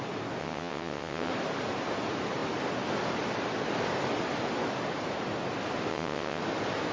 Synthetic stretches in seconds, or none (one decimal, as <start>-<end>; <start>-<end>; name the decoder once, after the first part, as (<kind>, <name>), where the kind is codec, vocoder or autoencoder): 0.4-1.3 (vocoder, WaveNeXt); 5.9-6.4